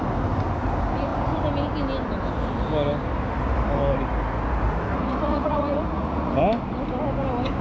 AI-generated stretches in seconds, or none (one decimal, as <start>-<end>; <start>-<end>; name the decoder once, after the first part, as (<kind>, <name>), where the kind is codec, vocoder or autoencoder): 4.9-6.4 (vocoder, Vocos)